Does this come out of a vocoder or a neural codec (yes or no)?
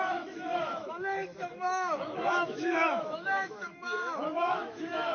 yes